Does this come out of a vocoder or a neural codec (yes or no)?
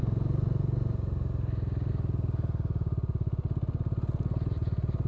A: no